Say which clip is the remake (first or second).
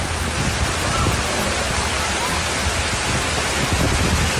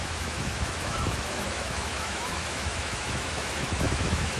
second